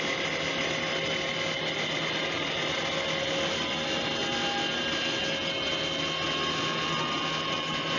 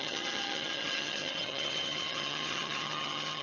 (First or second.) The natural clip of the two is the first